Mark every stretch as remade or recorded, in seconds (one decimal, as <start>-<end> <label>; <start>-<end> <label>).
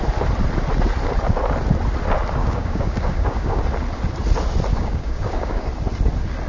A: 0.0-2.4 recorded; 2.4-3.6 remade; 3.6-4.7 recorded; 4.7-5.7 remade; 5.7-6.5 recorded